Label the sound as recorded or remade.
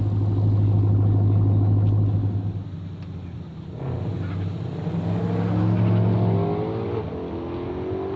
recorded